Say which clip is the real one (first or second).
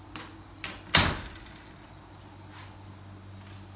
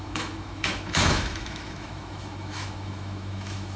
first